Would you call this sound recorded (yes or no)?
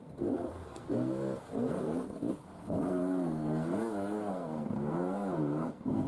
no